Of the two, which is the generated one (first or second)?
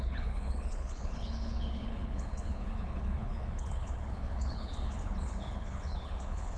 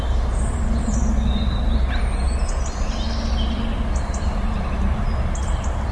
first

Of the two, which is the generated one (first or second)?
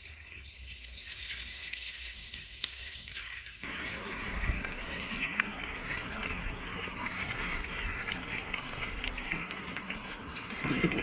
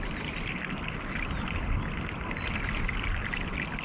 first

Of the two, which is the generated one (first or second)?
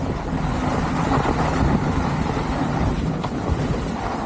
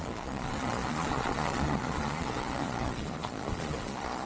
second